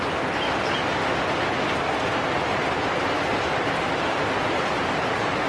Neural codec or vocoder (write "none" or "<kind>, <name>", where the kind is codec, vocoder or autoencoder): none